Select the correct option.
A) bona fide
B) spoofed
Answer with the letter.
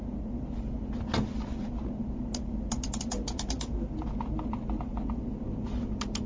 A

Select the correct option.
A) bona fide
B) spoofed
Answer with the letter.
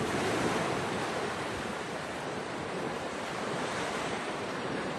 B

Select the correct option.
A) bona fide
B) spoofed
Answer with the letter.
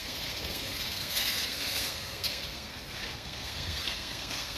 B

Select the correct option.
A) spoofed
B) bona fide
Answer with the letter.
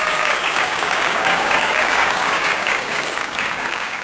A